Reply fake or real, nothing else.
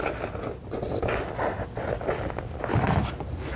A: real